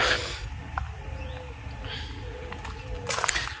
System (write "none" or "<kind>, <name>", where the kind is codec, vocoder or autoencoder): none